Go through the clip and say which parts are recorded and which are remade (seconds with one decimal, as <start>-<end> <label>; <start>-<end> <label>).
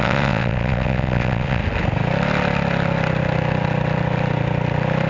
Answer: 0.0-1.6 remade; 1.6-5.1 recorded